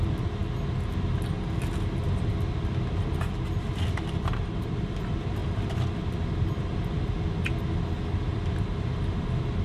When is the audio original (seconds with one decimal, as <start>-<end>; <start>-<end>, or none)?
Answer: 0.0-9.6